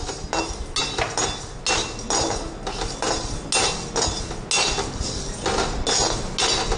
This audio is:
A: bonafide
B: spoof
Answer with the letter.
A